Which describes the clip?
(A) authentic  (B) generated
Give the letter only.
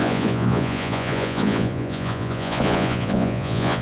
B